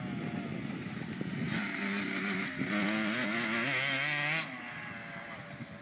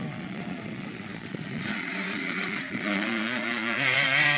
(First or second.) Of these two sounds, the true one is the first